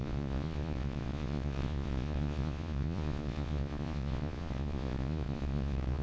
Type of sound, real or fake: fake